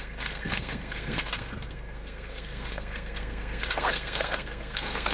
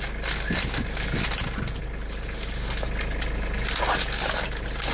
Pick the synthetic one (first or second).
first